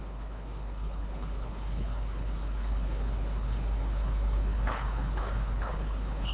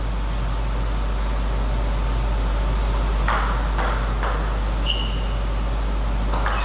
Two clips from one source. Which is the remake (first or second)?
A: first